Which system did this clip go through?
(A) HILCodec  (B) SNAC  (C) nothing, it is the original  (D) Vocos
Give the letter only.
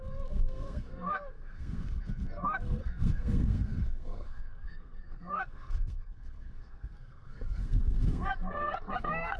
B